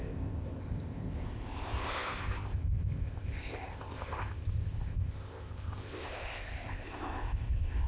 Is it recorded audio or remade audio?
remade